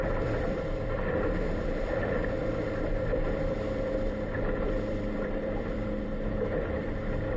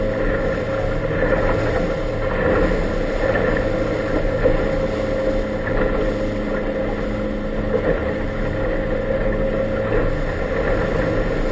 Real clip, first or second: second